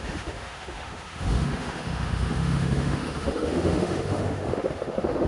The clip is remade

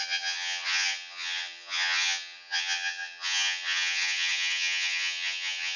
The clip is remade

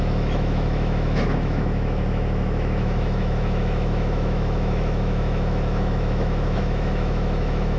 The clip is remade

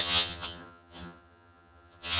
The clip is remade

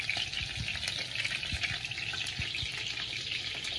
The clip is recorded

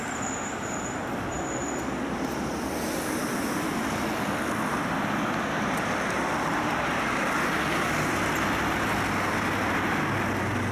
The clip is recorded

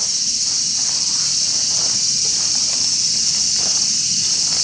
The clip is recorded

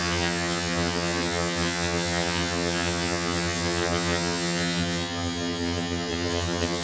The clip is remade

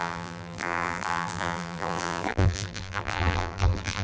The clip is remade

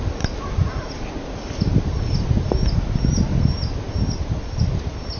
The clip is recorded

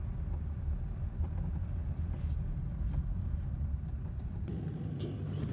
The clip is recorded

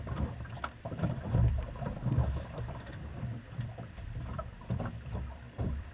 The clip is remade